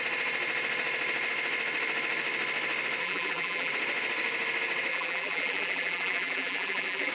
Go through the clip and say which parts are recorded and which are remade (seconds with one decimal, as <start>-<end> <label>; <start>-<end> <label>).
0.0-3.0 recorded; 3.0-3.7 remade; 3.7-4.9 recorded; 4.9-7.1 remade